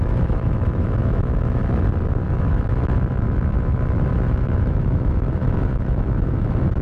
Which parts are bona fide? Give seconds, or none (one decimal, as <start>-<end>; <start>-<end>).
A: 1.6-2.3